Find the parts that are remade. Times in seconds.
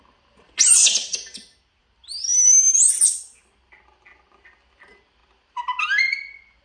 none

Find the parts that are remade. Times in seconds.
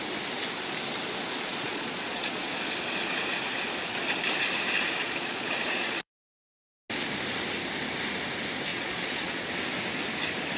1.5-2.6 (vocoder, Vocos); 5.0-6.1; 8.7-9.5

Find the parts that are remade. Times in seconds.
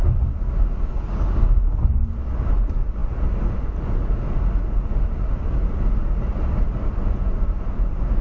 none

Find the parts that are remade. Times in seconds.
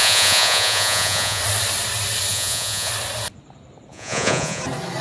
0.0-1.4 (vocoder, Vocos); 2.3-2.9; 3.9-4.6